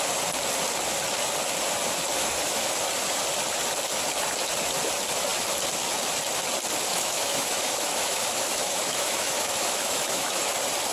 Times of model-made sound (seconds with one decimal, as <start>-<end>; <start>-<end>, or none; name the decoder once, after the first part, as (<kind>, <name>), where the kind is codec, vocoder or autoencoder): 2.2-2.7 (autoencoder, DAC-VAE); 6.9-10.5